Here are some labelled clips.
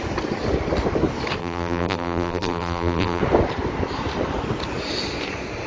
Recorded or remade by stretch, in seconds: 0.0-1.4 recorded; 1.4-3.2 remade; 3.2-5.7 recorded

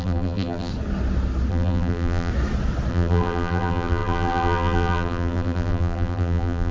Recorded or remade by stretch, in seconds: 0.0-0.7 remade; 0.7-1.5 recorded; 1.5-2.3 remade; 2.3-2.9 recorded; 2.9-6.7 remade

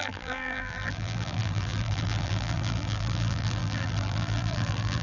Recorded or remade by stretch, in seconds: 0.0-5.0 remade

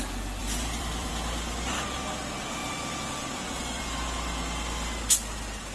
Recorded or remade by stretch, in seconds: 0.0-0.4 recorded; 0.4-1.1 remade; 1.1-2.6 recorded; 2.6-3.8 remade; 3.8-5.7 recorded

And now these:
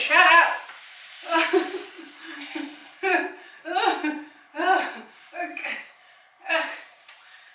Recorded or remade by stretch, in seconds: 0.0-7.5 remade